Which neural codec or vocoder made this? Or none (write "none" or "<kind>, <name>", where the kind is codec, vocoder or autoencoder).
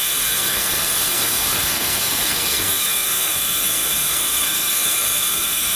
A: codec, SNAC